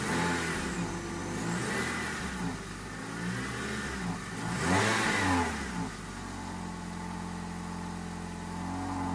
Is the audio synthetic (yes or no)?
no